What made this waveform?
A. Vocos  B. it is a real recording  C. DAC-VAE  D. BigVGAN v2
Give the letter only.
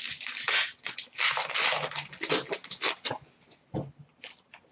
B